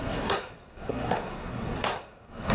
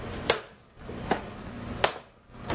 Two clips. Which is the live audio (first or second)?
second